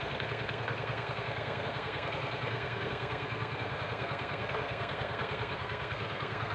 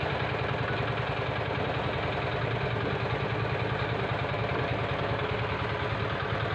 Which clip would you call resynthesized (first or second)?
first